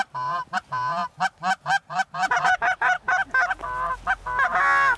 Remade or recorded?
recorded